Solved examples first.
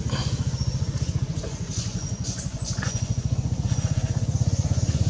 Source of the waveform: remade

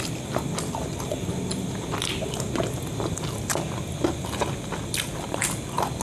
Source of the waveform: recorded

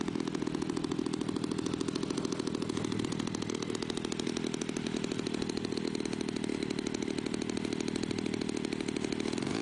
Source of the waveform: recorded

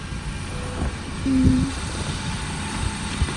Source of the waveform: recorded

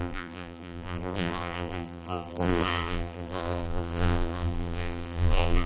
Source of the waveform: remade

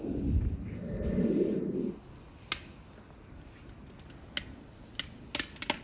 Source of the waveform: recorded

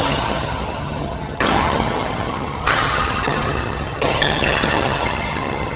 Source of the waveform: remade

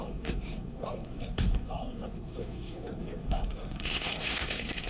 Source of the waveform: remade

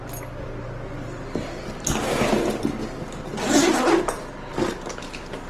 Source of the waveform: recorded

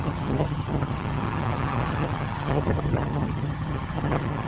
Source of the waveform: remade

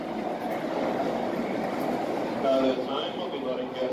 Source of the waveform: recorded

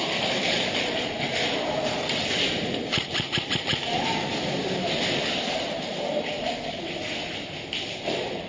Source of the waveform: remade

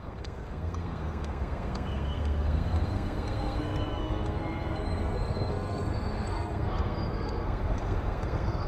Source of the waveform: remade